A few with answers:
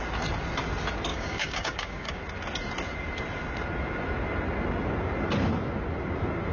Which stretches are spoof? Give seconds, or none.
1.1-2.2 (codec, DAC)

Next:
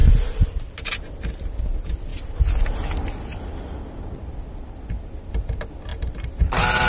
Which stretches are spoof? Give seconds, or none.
5.9-6.5 (vocoder, BigVGAN v2)

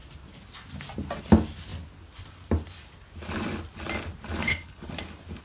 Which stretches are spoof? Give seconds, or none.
4.4-4.9 (codec, HILCodec)

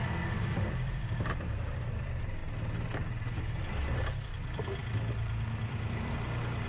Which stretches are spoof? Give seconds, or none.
0.0-2.4 (vocoder, BigVGAN v2); 3.4-4.8; 5.6-6.7

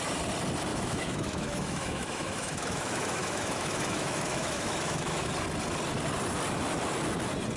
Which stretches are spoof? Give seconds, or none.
0.7-5.3 (autoencoder, DAC-VAE)

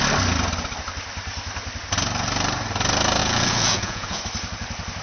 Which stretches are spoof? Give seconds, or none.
3.2-4.2 (vocoder, Vocos)

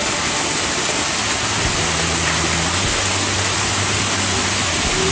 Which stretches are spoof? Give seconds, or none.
none

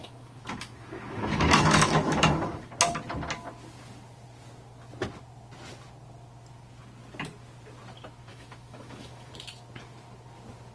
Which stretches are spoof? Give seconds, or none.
0.0-2.7 (autoencoder, DAC-VAE); 8.3-9.3